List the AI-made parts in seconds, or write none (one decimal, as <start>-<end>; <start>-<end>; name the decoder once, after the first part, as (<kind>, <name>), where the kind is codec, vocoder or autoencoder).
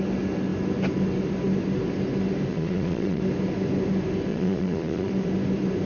2.5-3.2 (vocoder, Vocos); 4.3-5.1